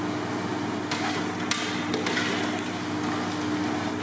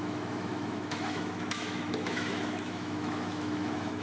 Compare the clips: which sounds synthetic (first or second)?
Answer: second